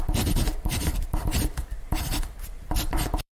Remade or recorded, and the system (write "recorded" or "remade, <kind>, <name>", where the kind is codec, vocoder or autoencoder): remade, vocoder, BigVGAN v2